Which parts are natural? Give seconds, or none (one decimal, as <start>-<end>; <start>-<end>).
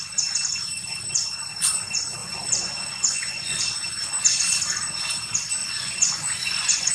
0.0-2.2; 3.6-5.6